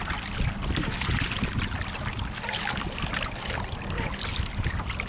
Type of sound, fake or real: real